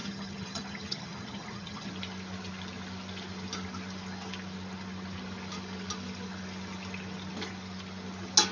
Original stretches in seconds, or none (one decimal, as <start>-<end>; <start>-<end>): 1.9-8.5